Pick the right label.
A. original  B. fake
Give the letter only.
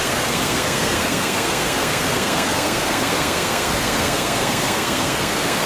B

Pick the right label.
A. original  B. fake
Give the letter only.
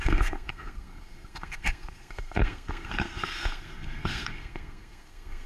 B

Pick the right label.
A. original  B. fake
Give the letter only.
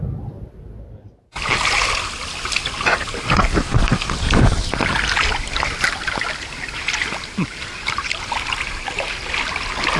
A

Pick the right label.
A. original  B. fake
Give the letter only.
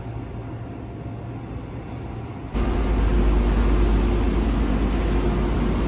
A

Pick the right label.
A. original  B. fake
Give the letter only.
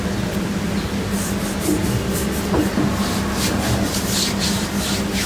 A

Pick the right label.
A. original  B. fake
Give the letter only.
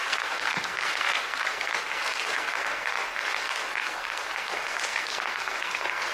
B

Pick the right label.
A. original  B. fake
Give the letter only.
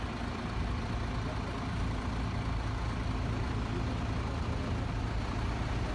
A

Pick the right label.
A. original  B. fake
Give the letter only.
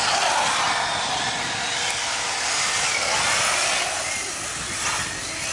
A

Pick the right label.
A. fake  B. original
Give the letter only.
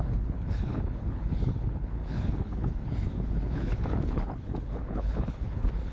A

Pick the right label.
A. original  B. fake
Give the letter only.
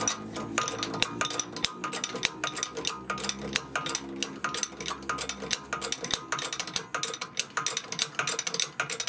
A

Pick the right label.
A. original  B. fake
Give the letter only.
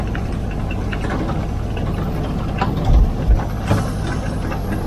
A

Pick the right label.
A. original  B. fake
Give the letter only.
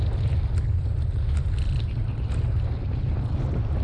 A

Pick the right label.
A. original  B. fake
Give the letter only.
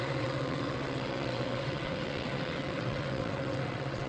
B